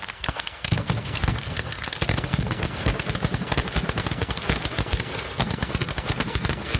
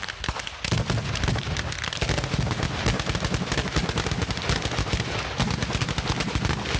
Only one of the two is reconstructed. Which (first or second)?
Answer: first